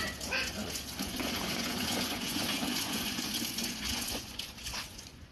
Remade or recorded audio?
remade